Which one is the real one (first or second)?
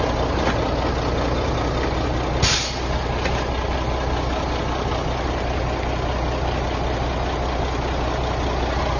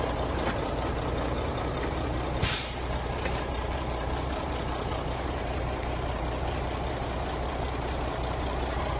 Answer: first